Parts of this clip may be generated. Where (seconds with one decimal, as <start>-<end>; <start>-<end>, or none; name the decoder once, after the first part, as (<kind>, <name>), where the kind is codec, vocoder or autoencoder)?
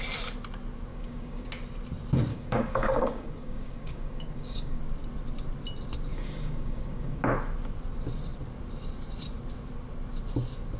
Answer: 0.9-1.5 (codec, DAC); 2.3-4.8; 6.1-7.2